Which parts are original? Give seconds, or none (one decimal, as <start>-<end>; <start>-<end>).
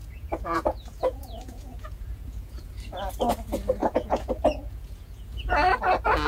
2.7-3.8; 5.5-6.3